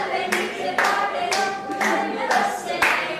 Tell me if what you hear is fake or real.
fake